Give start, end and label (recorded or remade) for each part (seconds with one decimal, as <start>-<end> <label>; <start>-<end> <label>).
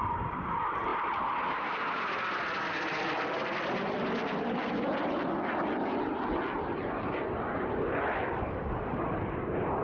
0.0-9.8 recorded